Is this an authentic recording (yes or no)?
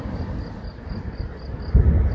yes